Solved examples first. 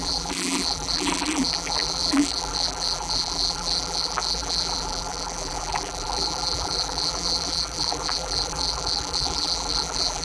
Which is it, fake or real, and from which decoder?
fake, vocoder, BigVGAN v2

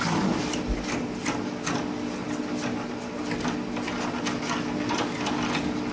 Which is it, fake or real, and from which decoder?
real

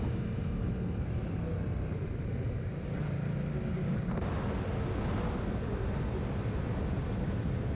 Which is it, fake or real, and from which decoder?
real